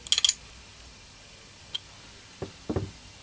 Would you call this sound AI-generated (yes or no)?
no